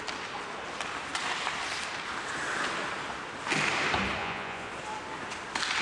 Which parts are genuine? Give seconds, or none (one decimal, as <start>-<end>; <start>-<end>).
0.0-4.2; 4.7-5.8